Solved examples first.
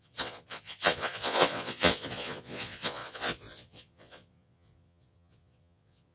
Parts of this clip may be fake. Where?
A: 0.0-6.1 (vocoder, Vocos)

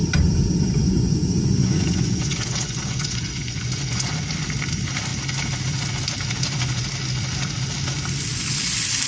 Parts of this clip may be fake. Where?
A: 0.8-4.2 (vocoder, Vocos)

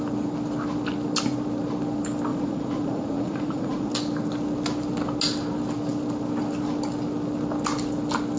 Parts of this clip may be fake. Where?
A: 2.3-3.9 (vocoder, Vocos)

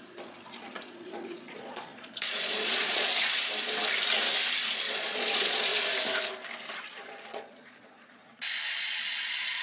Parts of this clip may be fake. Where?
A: 0.0-3.4 (vocoder, Vocos); 4.7-5.7; 6.8-9.6

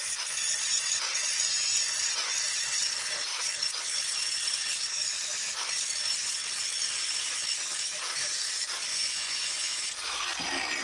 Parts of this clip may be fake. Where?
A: 8.9-9.8 (vocoder, Vocos)